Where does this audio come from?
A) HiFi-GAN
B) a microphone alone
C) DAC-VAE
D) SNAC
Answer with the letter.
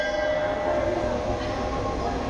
B